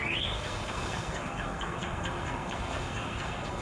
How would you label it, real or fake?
fake